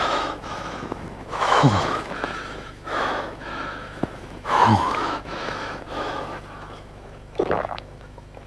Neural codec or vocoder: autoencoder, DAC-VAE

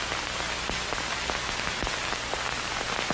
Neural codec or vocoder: none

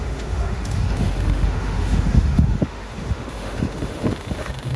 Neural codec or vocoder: autoencoder, DAC-VAE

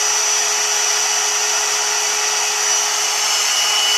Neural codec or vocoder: none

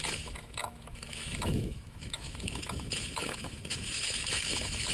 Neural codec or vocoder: autoencoder, DAC-VAE